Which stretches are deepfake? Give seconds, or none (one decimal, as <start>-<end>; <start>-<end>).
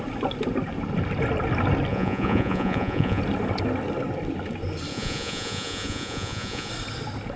1.9-3.2; 4.9-6.7